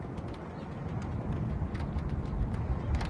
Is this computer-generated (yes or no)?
no